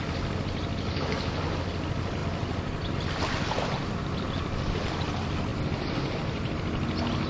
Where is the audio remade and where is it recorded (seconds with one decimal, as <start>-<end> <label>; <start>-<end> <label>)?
0.0-7.3 recorded